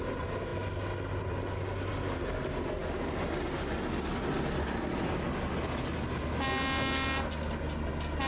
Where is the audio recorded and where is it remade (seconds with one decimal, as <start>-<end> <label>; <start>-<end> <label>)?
0.0-8.3 recorded